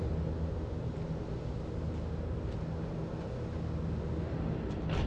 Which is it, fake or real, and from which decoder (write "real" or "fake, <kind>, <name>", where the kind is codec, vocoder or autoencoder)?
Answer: real